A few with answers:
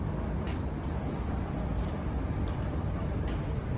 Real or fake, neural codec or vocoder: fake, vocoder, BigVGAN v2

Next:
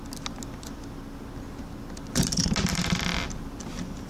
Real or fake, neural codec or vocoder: real